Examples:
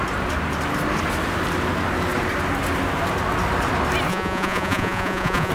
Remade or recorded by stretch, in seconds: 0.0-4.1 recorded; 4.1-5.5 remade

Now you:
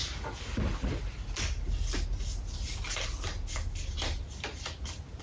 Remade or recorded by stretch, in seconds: 0.0-5.2 recorded